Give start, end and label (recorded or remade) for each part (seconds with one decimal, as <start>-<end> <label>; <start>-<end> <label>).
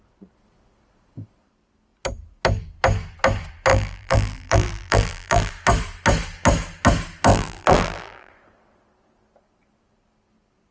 0.0-3.7 recorded; 3.7-5.5 remade; 5.5-7.3 recorded; 7.3-8.3 remade; 8.3-10.7 recorded